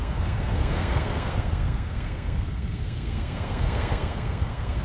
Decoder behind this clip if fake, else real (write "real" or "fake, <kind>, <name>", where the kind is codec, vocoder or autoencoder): fake, codec, SNAC